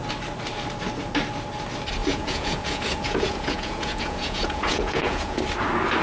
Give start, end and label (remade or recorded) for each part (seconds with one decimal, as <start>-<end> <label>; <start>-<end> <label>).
0.0-2.0 recorded; 2.0-5.4 remade; 5.4-6.0 recorded